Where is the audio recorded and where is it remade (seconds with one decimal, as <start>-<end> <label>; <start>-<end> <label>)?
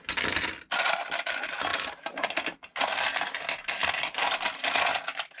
0.0-5.4 recorded